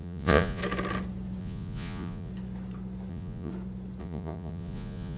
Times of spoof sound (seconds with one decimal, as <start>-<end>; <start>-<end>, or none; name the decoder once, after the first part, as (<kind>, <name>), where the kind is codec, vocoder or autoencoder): 0.0-0.6 (vocoder, Vocos); 1.4-2.3; 3.1-3.5; 4.0-5.2